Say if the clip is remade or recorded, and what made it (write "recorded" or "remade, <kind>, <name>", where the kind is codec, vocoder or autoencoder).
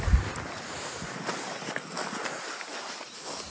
recorded